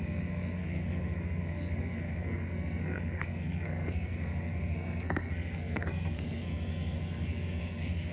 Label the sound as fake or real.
fake